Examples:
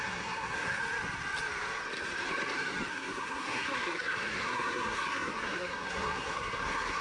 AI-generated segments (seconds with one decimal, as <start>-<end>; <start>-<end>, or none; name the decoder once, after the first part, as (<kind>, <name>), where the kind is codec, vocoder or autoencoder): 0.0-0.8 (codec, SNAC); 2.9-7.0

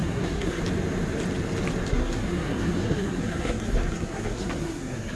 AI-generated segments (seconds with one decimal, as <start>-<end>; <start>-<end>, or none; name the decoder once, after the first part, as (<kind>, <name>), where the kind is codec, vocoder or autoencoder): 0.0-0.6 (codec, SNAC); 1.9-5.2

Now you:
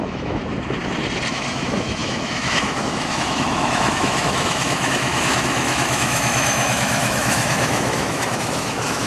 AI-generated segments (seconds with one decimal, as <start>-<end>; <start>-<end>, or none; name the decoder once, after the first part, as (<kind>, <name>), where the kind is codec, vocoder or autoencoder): 0.0-0.4 (autoencoder, DAC-VAE); 1.3-9.1

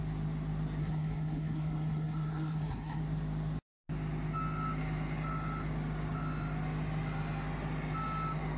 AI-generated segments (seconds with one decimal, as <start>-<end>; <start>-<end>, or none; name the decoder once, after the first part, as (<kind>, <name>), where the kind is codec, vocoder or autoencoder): 0.8-3.0 (codec, SNAC)

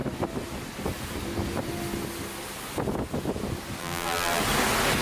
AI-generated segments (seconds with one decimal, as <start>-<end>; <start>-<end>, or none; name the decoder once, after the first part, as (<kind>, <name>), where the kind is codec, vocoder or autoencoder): 3.8-4.4 (vocoder, BigVGAN v2)

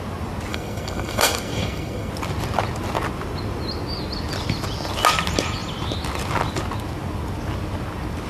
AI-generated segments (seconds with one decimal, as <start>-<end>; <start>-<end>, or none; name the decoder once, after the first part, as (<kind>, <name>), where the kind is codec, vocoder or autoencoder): 0.5-2.1 (codec, SNAC)

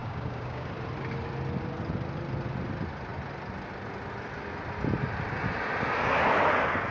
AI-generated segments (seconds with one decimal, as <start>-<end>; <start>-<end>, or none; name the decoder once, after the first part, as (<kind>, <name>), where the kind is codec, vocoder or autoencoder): 0.0-0.7 (codec, DAC)

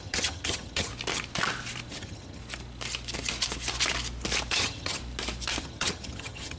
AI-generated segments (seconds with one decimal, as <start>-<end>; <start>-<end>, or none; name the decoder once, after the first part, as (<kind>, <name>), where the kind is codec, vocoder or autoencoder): 0.0-0.9 (vocoder, HiFi-GAN); 1.9-2.4; 4.5-5.0; 5.6-6.6